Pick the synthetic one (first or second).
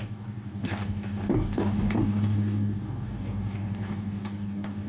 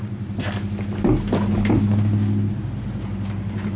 first